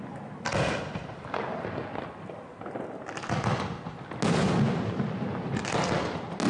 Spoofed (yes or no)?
no